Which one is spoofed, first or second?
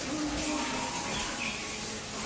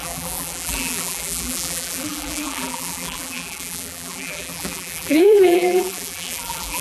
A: second